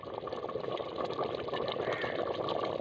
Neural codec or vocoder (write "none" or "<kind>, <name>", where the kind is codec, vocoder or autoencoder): none